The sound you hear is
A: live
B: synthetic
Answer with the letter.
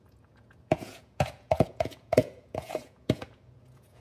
B